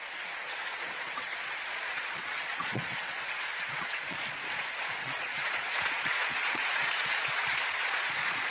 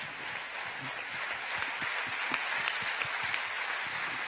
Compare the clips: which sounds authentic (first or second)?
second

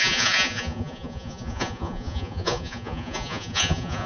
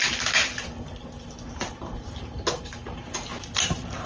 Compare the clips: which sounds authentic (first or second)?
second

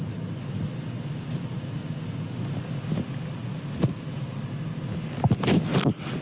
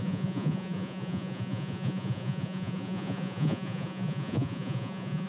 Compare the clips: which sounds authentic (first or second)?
first